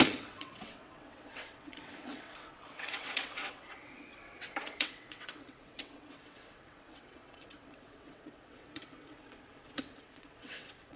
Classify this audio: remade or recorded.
remade